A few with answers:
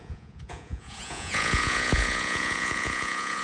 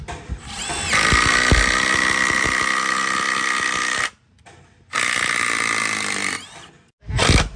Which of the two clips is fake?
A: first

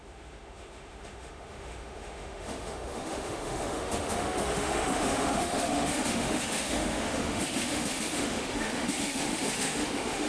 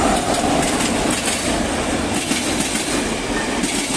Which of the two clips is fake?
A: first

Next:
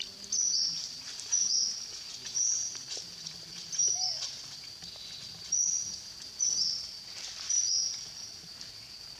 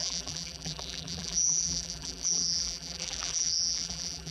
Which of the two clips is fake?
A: second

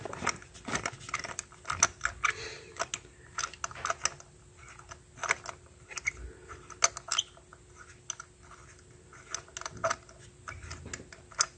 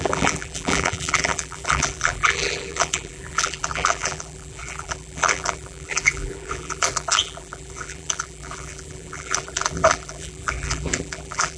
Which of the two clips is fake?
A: second